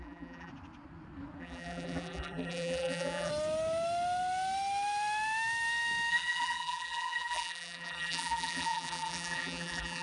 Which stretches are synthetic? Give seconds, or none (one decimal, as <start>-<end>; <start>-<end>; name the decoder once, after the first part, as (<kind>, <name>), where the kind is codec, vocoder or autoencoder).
0.0-0.5 (vocoder, BigVGAN v2); 1.4-3.3; 6.1-10.0